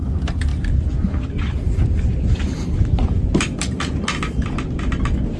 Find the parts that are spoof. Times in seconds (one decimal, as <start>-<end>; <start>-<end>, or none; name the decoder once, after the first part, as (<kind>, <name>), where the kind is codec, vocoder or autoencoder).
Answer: 3.2-3.8 (vocoder, BigVGAN v2)

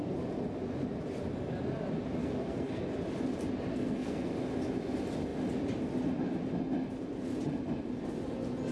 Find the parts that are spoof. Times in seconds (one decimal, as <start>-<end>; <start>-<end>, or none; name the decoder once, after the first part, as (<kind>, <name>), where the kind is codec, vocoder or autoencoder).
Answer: 2.2-2.8 (codec, SNAC); 3.7-4.3

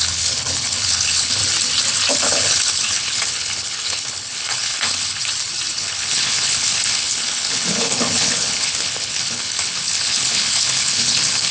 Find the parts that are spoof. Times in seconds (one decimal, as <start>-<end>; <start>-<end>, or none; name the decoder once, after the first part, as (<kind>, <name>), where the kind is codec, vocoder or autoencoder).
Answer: 0.0-1.4 (codec, HILCodec); 2.1-5.2; 5.7-11.5

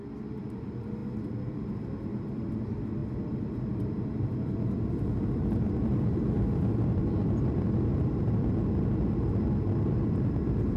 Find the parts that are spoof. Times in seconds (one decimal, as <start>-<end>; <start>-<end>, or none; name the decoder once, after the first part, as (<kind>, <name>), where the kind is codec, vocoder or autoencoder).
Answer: none

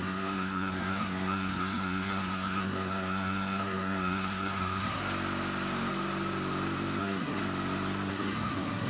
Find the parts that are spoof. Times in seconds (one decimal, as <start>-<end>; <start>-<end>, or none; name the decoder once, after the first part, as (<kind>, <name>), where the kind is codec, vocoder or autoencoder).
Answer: 0.0-5.0 (codec, SNAC); 7.0-7.4; 8.1-8.9

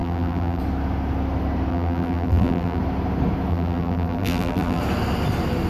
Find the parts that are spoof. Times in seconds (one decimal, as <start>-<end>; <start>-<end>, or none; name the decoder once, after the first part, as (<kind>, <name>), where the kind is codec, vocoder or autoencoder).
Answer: 0.0-0.6 (vocoder, BigVGAN v2); 1.7-2.8; 3.5-4.8